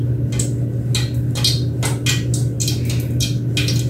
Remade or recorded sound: recorded